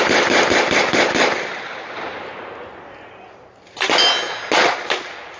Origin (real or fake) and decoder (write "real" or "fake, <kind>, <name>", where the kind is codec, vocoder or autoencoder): real